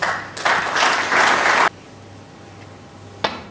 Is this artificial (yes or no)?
no